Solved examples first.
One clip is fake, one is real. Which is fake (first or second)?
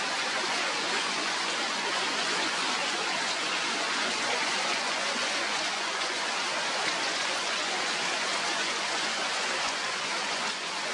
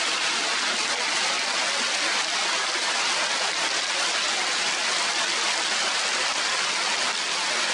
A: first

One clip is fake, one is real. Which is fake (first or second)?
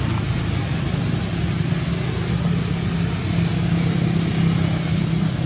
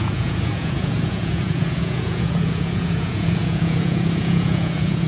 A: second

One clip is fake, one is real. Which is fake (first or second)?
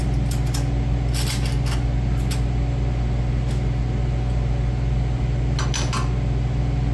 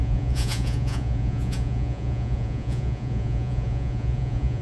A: second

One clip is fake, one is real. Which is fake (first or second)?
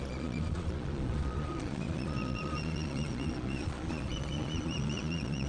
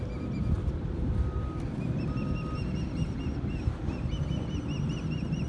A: first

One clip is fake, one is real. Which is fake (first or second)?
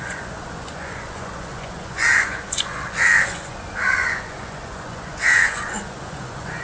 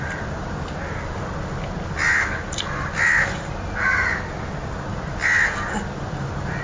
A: first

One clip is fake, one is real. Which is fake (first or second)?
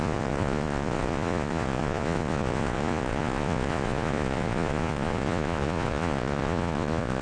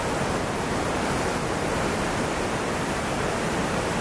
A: first